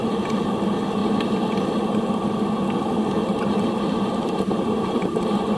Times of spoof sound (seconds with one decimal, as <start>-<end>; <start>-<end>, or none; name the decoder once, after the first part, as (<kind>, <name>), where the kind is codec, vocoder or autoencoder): 1.0-2.0 (vocoder, BigVGAN v2); 3.2-5.6